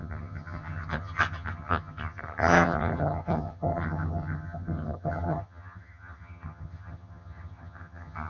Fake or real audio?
fake